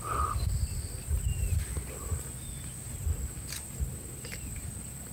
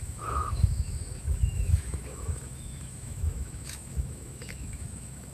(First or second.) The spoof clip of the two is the second